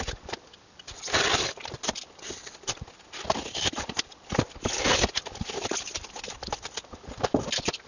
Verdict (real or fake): real